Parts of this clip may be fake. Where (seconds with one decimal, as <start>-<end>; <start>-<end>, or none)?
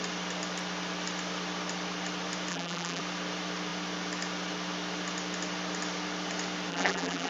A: 2.5-3.0; 6.7-7.3